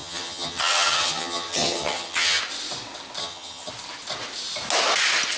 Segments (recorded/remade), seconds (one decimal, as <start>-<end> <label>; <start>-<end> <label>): 0.0-2.4 remade; 2.4-3.2 recorded; 3.2-3.7 remade; 3.7-5.4 recorded